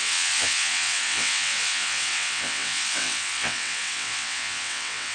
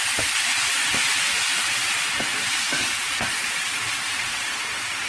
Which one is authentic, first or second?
second